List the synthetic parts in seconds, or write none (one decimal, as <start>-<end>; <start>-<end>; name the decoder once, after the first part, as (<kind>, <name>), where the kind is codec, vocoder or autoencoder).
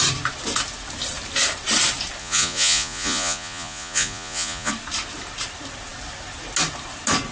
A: 2.2-4.7 (vocoder, Vocos)